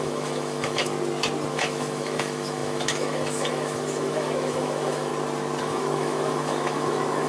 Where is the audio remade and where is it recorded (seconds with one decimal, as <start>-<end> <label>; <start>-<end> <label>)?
0.0-0.9 remade; 0.9-1.5 recorded; 1.5-5.1 remade; 5.1-5.6 recorded; 5.6-7.3 remade